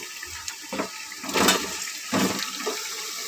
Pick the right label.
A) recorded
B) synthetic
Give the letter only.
A